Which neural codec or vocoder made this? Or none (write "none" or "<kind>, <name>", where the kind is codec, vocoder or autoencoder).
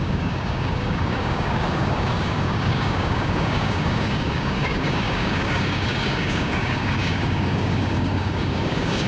codec, DAC